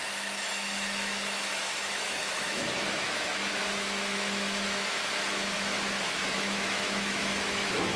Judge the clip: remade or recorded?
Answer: remade